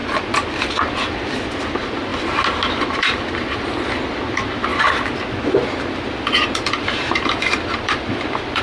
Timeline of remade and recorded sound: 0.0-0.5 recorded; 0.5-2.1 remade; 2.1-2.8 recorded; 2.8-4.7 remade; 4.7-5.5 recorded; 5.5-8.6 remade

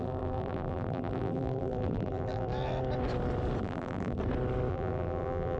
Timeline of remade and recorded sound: 0.0-2.5 remade; 2.5-3.6 recorded; 3.6-4.2 remade; 4.2-4.7 recorded; 4.7-5.6 remade

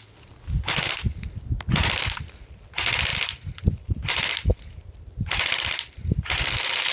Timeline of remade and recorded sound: 0.0-3.1 recorded; 3.1-4.0 remade; 4.0-4.5 recorded; 4.5-6.0 remade; 6.0-6.9 recorded

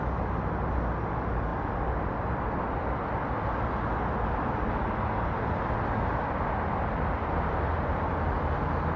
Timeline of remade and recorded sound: 0.0-9.0 recorded

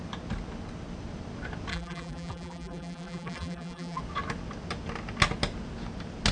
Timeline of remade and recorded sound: 0.0-1.7 recorded; 1.7-4.0 remade; 4.0-6.3 recorded

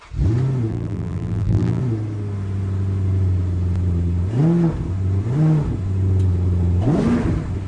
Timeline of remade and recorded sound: 0.0-0.7 recorded; 0.7-1.8 remade; 1.8-7.7 recorded

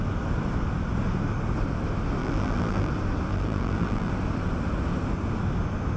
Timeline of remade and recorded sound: 0.0-2.2 recorded; 2.2-2.9 remade; 2.9-3.3 recorded; 3.3-4.1 remade; 4.1-6.0 recorded

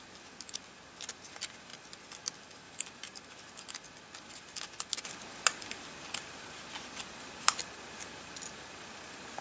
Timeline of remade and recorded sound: 0.0-1.7 recorded; 1.7-3.3 remade; 3.3-9.4 recorded